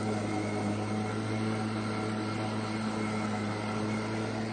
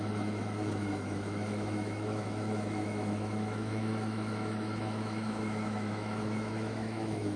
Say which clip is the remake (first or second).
second